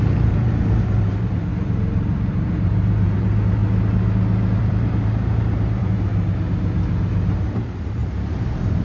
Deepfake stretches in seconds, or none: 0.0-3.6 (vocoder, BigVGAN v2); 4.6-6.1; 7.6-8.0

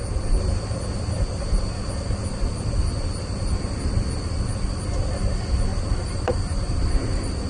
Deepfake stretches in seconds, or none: 5.7-7.5 (vocoder, BigVGAN v2)

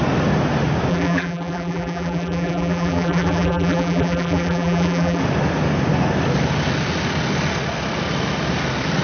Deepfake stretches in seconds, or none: 0.9-5.2 (vocoder, BigVGAN v2)